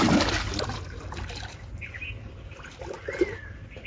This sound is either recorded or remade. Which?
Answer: recorded